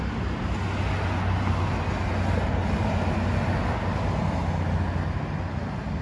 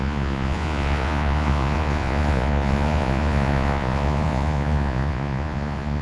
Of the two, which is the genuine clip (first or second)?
first